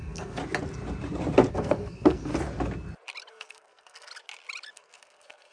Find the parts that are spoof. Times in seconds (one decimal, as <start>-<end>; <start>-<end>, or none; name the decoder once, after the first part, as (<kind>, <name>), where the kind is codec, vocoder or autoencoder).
0.0-0.4 (codec, SNAC); 1.5-2.3; 3.3-4.1; 4.7-5.5